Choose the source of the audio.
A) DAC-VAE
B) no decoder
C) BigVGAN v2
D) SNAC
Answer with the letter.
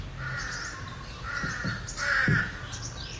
B